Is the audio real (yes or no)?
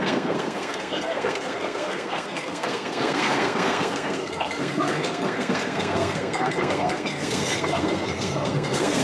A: no